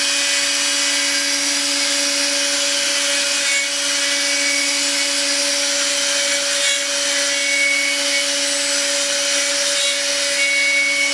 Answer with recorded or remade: recorded